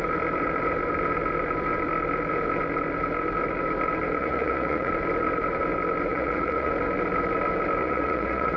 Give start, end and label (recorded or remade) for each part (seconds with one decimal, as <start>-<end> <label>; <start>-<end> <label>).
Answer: 0.0-4.2 recorded; 4.2-4.9 remade; 4.9-6.1 recorded; 6.1-6.7 remade; 6.7-7.8 recorded; 7.8-8.6 remade